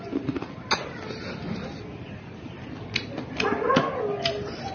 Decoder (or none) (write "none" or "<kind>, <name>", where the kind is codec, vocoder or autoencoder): none